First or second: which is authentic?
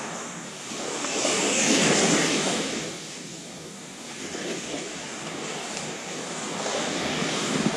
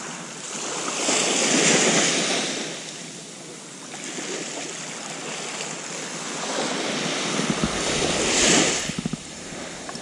second